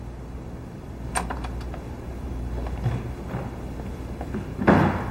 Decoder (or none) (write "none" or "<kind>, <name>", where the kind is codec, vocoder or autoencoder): none